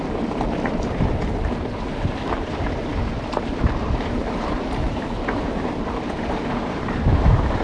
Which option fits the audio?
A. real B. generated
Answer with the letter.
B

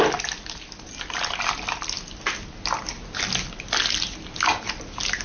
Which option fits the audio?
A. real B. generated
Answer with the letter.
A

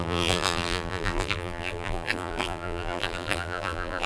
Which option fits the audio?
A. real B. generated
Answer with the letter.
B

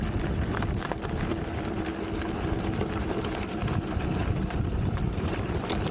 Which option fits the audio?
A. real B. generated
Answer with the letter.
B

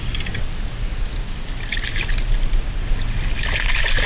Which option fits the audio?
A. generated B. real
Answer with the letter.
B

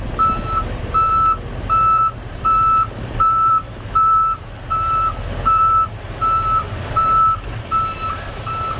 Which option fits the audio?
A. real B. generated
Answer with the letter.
B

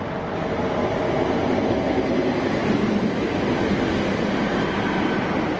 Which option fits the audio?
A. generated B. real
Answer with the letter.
B